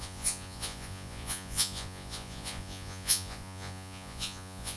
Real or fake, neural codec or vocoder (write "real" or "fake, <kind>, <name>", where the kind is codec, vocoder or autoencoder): fake, vocoder, Vocos